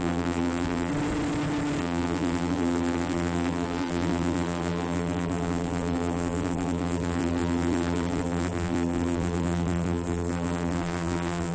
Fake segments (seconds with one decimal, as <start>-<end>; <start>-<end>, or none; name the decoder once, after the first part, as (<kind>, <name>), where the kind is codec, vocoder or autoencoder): 0.0-0.9 (vocoder, BigVGAN v2); 1.8-11.5